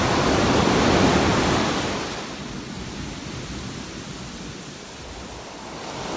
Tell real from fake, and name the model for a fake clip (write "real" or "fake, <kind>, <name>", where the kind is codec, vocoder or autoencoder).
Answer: real